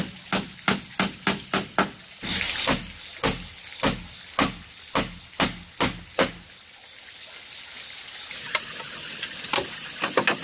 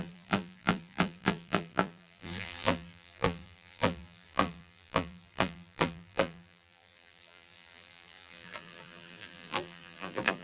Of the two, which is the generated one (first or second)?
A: second